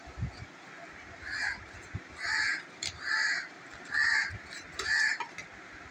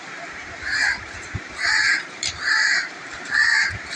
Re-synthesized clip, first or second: second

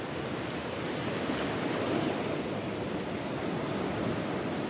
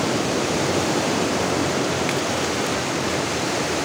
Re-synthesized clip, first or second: second